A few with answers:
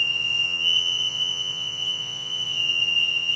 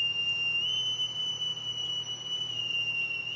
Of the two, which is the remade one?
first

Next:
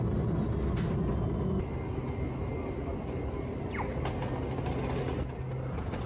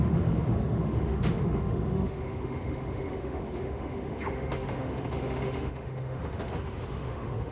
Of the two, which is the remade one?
second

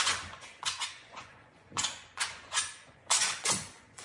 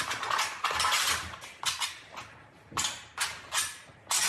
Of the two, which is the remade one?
first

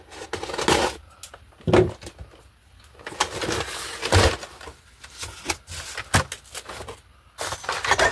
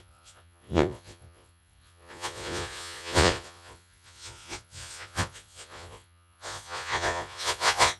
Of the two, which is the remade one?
second